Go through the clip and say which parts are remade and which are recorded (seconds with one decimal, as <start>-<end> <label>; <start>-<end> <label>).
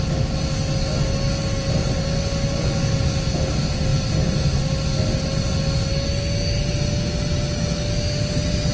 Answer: 0.0-8.7 recorded